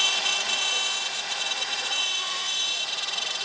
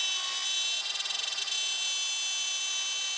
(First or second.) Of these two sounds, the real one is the second